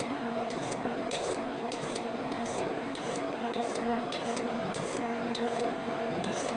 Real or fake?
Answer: fake